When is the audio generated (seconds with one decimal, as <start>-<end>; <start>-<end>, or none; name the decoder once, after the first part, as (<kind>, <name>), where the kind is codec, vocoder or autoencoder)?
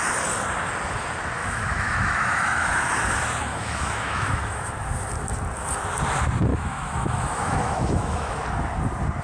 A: 1.4-2.9 (autoencoder, DAC-VAE); 3.5-4.7; 6.5-8.3